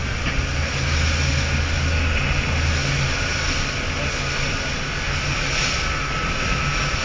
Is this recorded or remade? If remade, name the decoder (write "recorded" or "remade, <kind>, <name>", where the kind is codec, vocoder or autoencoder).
recorded